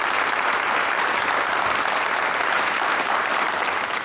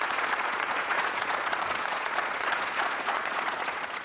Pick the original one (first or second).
first